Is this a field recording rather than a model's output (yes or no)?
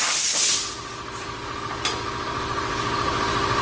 yes